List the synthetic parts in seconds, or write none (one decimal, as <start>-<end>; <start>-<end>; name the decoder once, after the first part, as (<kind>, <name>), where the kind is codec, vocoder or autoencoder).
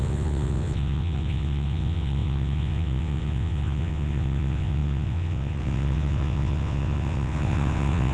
0.0-8.1 (vocoder, WaveNeXt)